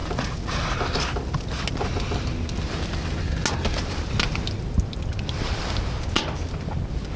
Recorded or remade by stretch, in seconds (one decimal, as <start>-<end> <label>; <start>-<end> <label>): 0.0-7.2 recorded